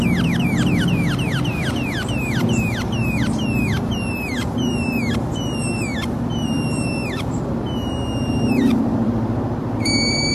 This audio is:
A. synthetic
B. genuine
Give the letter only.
A